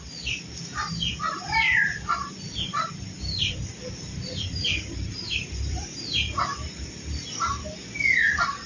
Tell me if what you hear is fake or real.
fake